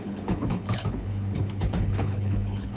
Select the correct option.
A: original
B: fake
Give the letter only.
B